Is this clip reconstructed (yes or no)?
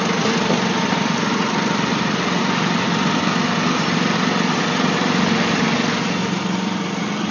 yes